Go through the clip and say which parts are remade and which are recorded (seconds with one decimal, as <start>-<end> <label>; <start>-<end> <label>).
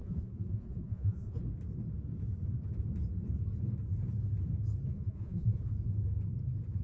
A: 0.0-1.4 remade; 1.4-4.9 recorded; 4.9-5.6 remade; 5.6-6.8 recorded